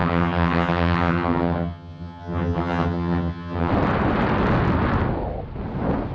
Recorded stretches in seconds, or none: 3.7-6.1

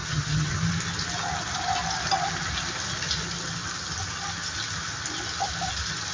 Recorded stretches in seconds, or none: 0.6-6.1

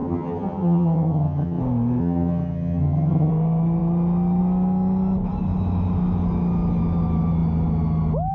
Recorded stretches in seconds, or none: 1.6-2.0; 3.3-8.3

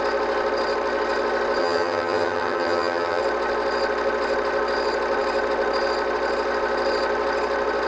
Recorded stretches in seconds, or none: 0.0-1.6; 3.2-7.9